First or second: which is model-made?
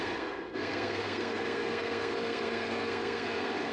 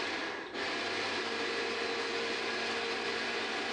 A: first